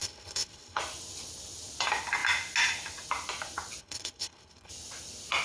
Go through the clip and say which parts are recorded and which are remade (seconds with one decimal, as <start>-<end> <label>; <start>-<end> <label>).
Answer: 0.0-0.8 remade; 0.8-3.8 recorded; 3.8-4.7 remade; 4.7-5.4 recorded